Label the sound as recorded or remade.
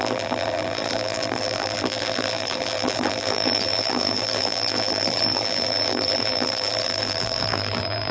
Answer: remade